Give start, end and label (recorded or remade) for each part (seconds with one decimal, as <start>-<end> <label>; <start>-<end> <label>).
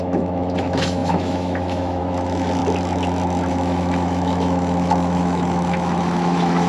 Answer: 0.0-2.6 remade; 2.6-3.5 recorded; 3.5-6.7 remade